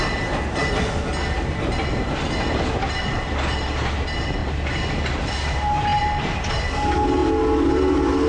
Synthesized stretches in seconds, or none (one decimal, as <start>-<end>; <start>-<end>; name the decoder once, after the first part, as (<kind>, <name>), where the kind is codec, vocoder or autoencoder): none

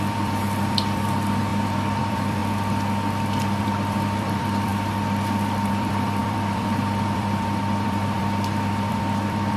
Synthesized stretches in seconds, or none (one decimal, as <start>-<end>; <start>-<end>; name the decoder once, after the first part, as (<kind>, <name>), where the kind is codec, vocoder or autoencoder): 0.0-1.5 (vocoder, BigVGAN v2); 2.0-2.4; 3.6-4.7; 5.7-9.6